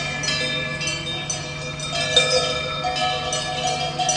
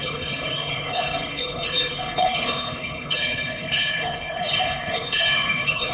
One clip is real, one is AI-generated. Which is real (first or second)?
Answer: first